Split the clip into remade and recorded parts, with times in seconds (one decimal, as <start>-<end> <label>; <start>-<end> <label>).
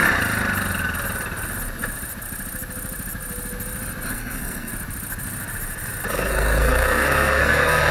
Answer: 0.0-4.1 recorded; 4.1-4.7 remade; 4.7-6.1 recorded; 6.1-7.9 remade